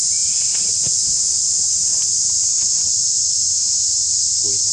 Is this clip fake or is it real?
real